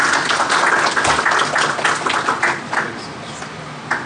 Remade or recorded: recorded